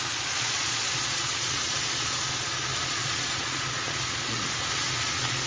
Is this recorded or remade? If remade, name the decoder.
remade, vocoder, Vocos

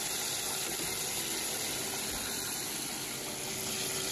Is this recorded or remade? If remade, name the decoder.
recorded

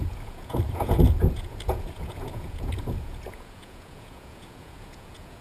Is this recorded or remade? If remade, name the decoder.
remade, vocoder, Vocos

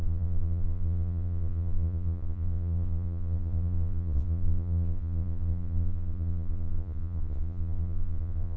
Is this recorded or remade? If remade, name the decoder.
remade, vocoder, Vocos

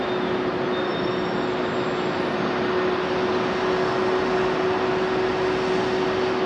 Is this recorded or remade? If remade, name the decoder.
recorded